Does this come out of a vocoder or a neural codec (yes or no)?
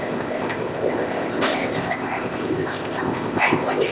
yes